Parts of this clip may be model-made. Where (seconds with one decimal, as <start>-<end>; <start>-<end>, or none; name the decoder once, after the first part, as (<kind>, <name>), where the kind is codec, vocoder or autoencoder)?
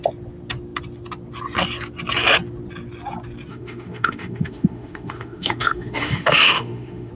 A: 3.5-7.1 (autoencoder, DAC-VAE)